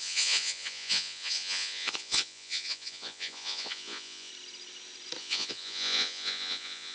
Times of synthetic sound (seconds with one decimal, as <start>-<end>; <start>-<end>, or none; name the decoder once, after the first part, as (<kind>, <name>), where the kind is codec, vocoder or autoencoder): 0.0-4.3 (vocoder, Vocos); 5.2-6.9